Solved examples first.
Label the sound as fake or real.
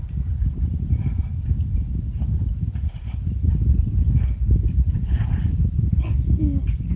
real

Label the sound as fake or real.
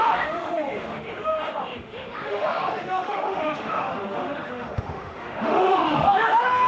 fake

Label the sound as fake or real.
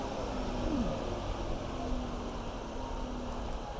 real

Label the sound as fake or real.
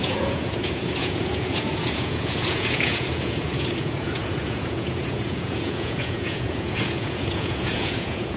fake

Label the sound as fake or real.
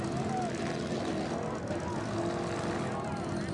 real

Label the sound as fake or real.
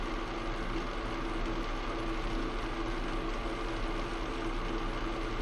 real